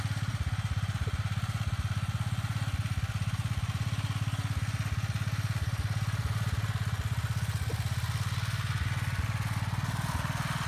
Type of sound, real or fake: real